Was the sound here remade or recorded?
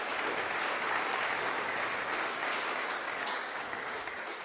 remade